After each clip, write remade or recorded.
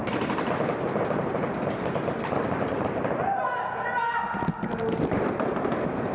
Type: recorded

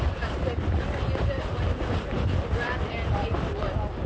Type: recorded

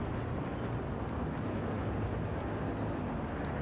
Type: recorded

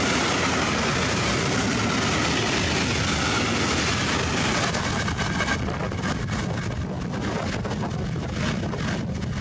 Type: recorded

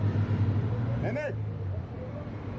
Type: recorded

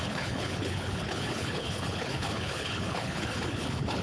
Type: remade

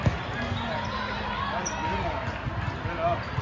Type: recorded